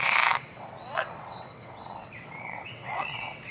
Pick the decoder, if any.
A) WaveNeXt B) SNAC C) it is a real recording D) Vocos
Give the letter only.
A